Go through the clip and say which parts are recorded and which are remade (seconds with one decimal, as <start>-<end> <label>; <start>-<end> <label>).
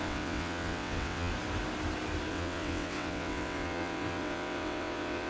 0.0-1.3 remade; 1.3-2.3 recorded; 2.3-5.3 remade